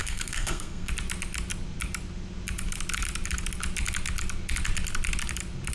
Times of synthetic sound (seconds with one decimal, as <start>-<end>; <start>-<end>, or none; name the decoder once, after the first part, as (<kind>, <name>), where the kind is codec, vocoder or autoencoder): 0.0-0.9 (codec, SNAC)